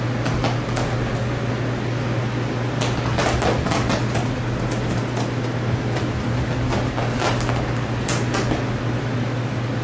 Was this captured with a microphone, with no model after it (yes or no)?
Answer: yes